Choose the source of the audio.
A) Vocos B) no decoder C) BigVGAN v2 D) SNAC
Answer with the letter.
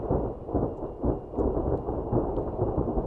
B